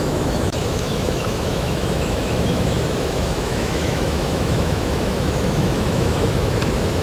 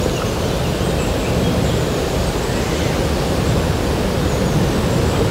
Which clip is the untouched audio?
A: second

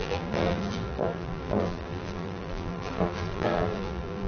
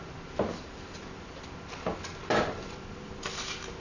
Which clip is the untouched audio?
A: second